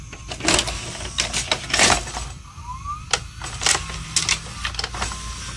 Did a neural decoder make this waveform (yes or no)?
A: no